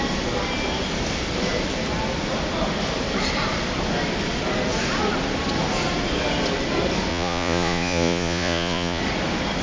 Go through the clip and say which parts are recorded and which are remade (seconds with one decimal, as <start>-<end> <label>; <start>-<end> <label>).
0.0-7.1 recorded; 7.1-9.0 remade; 9.0-9.6 recorded